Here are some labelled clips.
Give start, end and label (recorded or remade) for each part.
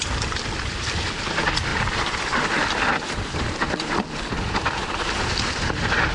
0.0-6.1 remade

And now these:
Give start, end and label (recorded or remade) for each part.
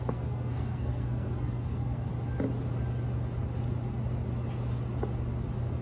0.0-2.1 remade; 2.1-5.8 recorded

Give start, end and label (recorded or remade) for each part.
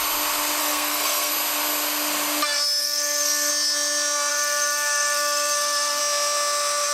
0.0-0.6 recorded; 0.6-1.3 remade; 1.3-2.8 recorded; 2.8-3.5 remade; 3.5-4.3 recorded; 4.3-6.0 remade; 6.0-6.9 recorded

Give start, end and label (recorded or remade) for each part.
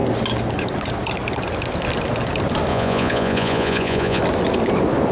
0.0-2.7 recorded; 2.7-4.2 remade; 4.2-5.1 recorded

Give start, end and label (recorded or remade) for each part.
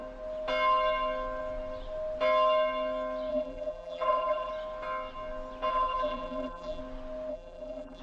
0.0-3.3 recorded; 3.3-4.5 remade; 4.5-5.7 recorded; 5.7-6.8 remade; 6.8-7.3 recorded; 7.3-8.0 remade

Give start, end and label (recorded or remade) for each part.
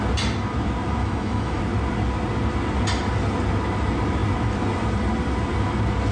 0.0-1.0 recorded; 1.0-1.6 remade; 1.6-6.1 recorded